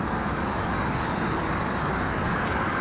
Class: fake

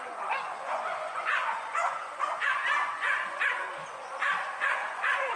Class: fake